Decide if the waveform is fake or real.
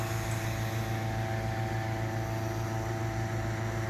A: real